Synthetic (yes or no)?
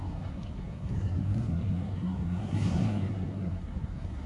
yes